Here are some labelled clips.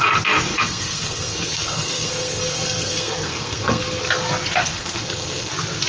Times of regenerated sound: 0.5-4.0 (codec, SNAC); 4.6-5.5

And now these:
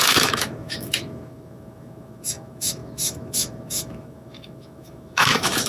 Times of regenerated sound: 0.0-5.7 (autoencoder, DAC-VAE)

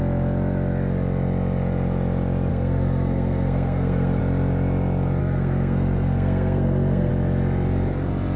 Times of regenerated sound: 2.5-4.2 (codec, SNAC); 5.2-7.1

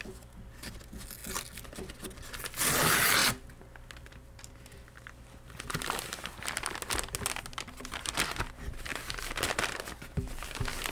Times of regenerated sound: none